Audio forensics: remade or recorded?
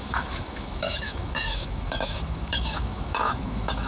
remade